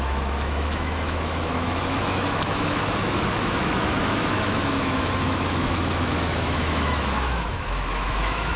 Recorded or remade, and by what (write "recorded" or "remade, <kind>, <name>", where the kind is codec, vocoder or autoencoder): remade, autoencoder, DAC-VAE